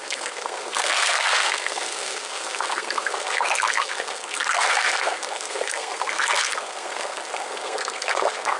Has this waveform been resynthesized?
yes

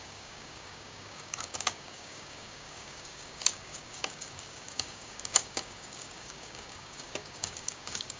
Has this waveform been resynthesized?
yes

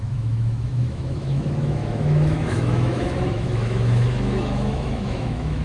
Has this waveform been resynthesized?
yes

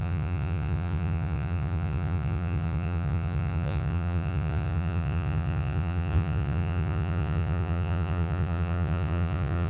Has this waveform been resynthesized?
yes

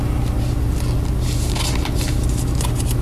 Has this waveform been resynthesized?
no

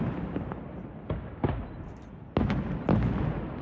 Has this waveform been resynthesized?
no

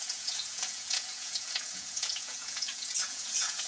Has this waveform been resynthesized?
yes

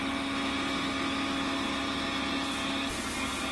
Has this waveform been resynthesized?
no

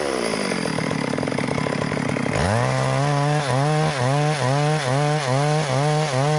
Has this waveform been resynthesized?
no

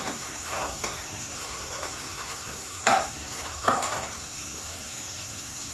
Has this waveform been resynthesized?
yes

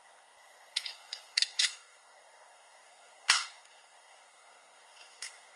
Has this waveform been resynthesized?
yes